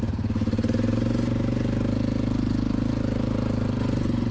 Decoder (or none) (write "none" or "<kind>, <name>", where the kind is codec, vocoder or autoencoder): none